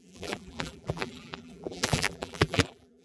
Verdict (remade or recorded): remade